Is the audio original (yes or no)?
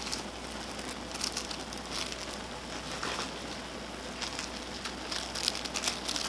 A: yes